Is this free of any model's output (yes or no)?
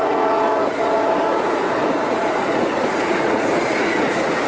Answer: no